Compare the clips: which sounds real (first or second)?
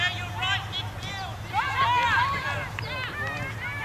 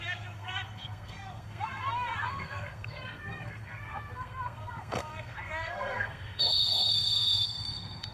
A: first